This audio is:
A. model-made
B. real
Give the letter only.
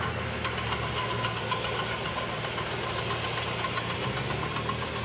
B